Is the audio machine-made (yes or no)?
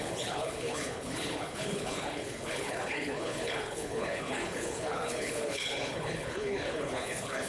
yes